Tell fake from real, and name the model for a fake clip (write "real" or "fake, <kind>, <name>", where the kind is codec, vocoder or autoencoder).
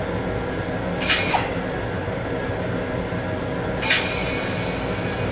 real